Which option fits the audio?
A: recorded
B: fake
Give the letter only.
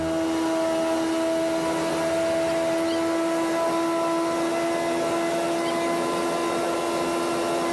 A